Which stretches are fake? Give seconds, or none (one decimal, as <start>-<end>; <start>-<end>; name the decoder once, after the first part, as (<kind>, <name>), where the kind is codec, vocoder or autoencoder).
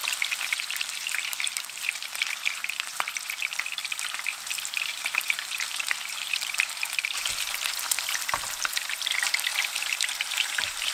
0.0-2.3 (vocoder, BigVGAN v2); 3.8-7.3; 9.5-10.9